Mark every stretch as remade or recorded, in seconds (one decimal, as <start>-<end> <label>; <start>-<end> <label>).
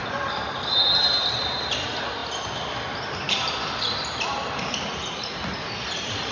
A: 0.0-6.3 recorded